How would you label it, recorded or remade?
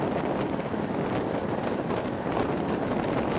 recorded